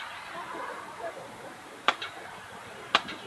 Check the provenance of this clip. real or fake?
fake